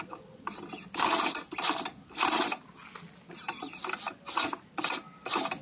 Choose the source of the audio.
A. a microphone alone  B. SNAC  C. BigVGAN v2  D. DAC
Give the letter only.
A